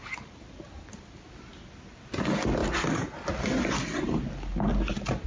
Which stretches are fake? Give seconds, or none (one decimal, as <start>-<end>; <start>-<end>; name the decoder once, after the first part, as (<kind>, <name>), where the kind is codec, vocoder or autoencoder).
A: none